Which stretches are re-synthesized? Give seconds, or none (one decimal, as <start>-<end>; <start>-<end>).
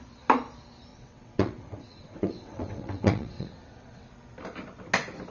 0.9-4.1